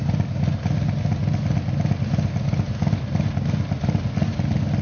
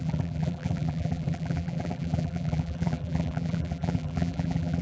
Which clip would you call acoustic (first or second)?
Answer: first